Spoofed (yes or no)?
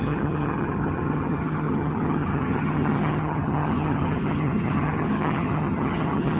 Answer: yes